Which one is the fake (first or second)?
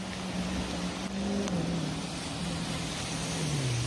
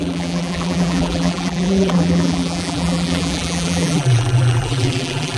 second